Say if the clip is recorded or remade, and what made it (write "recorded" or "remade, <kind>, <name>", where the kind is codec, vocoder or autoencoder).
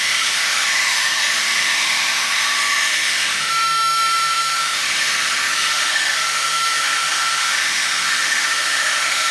remade, autoencoder, DAC-VAE